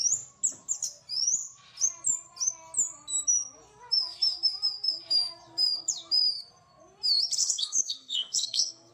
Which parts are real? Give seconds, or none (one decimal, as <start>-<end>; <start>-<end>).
0.0-7.4